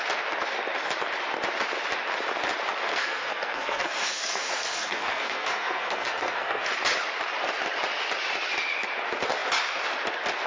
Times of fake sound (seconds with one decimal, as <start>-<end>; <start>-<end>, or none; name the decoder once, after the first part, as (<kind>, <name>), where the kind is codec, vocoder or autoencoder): 2.9-6.7 (codec, SNAC)